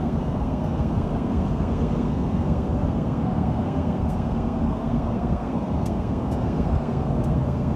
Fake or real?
fake